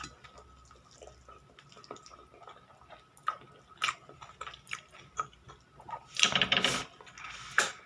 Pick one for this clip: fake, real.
real